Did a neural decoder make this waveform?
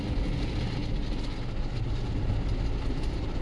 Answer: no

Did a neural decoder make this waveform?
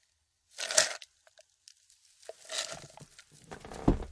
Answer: no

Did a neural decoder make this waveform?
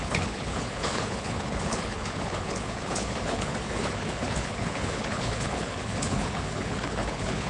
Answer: yes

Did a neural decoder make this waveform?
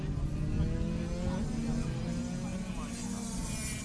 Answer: no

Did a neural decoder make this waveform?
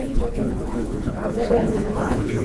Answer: yes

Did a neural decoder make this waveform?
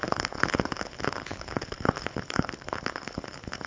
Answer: yes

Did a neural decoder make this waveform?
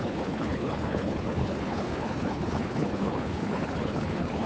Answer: yes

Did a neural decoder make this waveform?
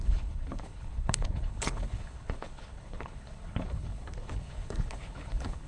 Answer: yes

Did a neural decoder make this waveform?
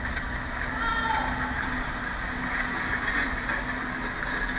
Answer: no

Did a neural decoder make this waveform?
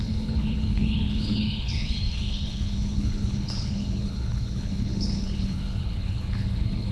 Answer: yes